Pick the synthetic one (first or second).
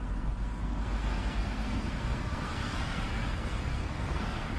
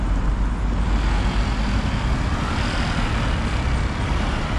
first